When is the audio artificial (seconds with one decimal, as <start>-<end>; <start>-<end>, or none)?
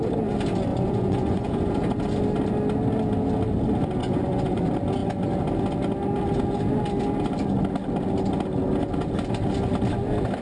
0.7-1.7; 4.0-4.6